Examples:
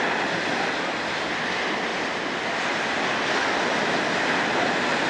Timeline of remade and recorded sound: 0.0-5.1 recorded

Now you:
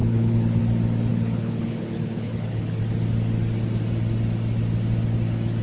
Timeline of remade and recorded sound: 0.0-0.6 remade; 0.6-1.1 recorded; 1.1-2.8 remade; 2.8-5.6 recorded

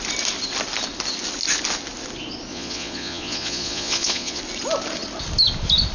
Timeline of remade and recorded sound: 0.0-2.5 recorded; 2.5-4.4 remade; 4.4-5.9 recorded

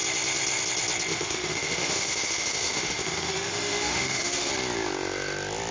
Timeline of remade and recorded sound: 0.0-1.1 recorded; 1.1-4.5 remade; 4.5-5.7 recorded

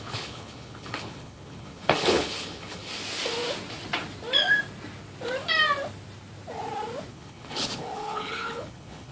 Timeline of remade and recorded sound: 0.0-3.0 remade; 3.0-7.1 recorded; 7.1-9.1 remade